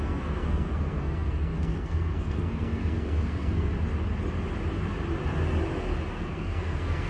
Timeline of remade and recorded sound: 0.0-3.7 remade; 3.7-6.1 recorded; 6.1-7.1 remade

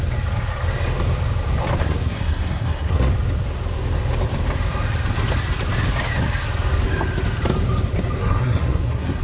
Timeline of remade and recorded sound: 0.0-1.8 recorded; 1.8-3.1 remade; 3.1-8.2 recorded; 8.2-9.2 remade